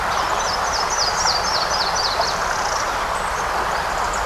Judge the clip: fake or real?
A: real